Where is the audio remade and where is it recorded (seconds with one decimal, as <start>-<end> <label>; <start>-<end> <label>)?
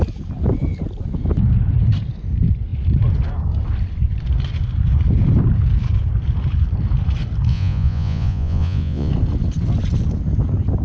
0.0-7.5 recorded; 7.5-9.1 remade; 9.1-10.8 recorded